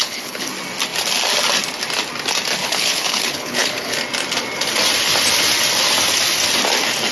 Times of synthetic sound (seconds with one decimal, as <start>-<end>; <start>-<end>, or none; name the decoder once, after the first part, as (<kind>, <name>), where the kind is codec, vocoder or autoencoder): 0.0-0.5 (codec, HILCodec); 2.6-4.0